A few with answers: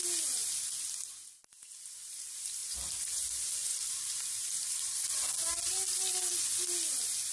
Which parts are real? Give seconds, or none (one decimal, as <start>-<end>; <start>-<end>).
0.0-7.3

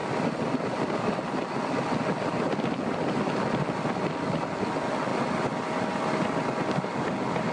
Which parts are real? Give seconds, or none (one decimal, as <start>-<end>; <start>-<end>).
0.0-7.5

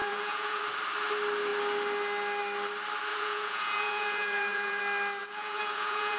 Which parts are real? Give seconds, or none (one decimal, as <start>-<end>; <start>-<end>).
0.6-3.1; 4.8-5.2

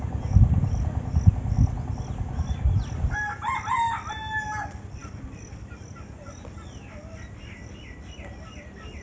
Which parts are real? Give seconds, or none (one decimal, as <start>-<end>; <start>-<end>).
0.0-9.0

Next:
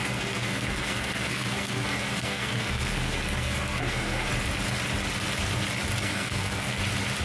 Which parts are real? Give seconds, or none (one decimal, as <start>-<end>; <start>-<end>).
4.3-6.0; 6.8-7.2

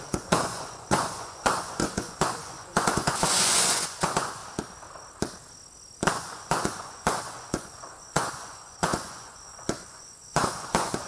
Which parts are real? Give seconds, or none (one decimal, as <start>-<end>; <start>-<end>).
4.4-6.1